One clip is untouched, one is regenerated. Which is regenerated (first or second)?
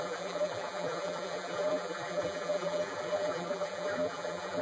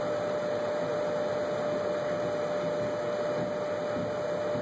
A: first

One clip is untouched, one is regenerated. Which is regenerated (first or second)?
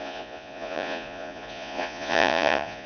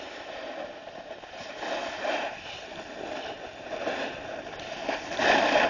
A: first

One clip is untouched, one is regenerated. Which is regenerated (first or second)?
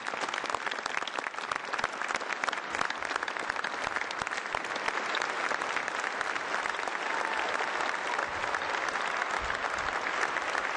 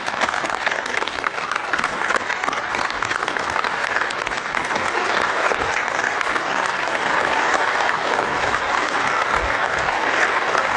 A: second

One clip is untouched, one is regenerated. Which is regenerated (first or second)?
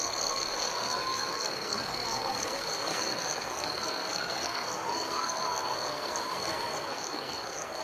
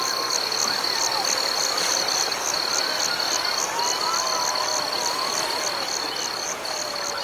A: first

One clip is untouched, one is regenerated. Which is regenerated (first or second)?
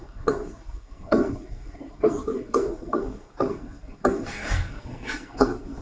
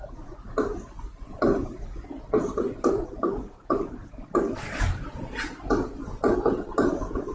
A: first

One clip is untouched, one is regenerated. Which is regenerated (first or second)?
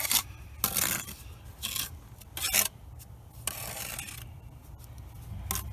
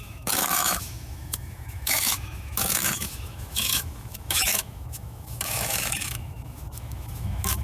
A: second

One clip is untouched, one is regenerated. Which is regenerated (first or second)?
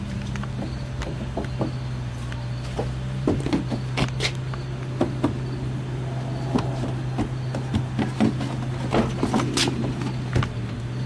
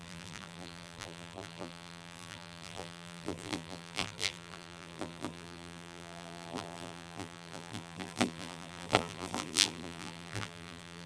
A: second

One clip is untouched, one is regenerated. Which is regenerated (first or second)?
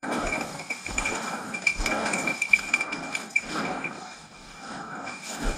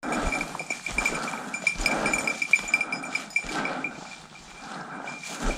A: first